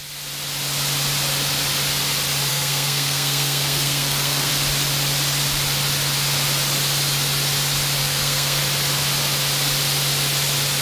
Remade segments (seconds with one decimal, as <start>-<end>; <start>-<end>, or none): 2.5-4.5; 8.0-8.6